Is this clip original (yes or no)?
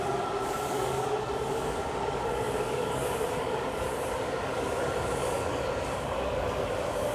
no